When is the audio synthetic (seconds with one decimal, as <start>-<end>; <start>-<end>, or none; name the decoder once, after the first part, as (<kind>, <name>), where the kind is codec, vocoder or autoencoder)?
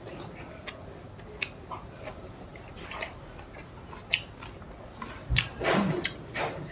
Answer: none